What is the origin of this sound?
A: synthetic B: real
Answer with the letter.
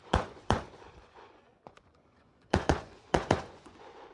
A